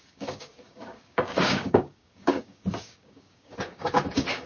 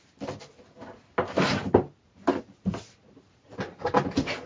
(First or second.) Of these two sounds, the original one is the second